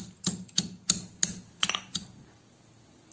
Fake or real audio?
real